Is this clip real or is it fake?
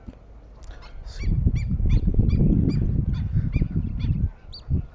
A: real